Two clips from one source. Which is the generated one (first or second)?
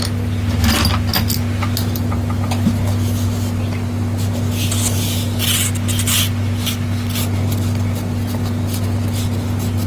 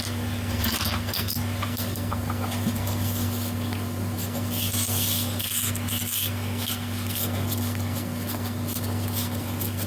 second